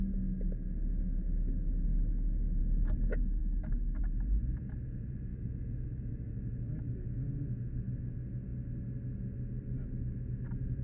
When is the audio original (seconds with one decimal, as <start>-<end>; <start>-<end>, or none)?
0.0-1.9; 2.6-3.4; 4.0-5.3; 6.3-10.8